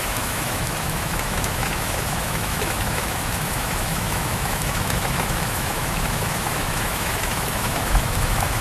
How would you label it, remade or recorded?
remade